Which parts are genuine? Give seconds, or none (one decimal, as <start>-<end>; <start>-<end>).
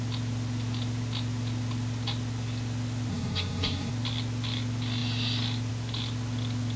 0.0-3.1; 3.9-6.8